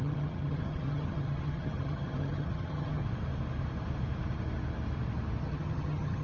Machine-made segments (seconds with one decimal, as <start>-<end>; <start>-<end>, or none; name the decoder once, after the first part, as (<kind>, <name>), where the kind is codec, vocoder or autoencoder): 0.0-3.0 (vocoder, HiFi-GAN); 5.4-6.2